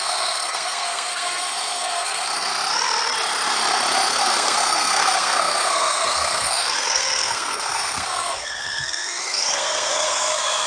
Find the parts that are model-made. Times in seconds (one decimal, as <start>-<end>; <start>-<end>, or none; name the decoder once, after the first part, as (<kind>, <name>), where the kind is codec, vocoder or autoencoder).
0.0-2.5 (codec, SNAC); 4.1-10.7